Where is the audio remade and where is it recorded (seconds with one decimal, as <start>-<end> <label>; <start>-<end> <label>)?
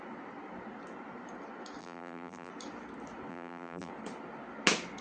0.0-1.8 recorded; 1.8-2.5 remade; 2.5-3.3 recorded; 3.3-3.9 remade; 3.9-5.0 recorded